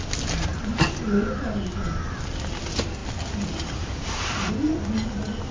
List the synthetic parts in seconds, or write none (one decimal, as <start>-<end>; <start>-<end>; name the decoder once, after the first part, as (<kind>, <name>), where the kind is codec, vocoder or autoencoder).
none